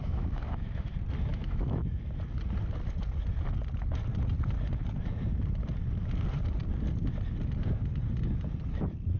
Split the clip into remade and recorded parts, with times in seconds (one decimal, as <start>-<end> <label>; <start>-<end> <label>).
0.0-0.9 remade; 0.9-1.3 recorded; 1.3-2.0 remade; 2.0-9.2 recorded